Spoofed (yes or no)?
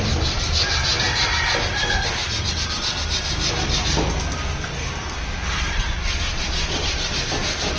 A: no